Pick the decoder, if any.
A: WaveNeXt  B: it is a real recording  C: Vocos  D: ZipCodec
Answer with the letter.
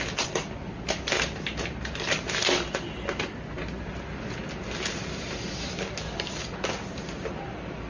B